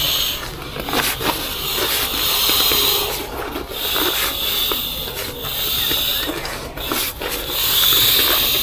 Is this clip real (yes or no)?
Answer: yes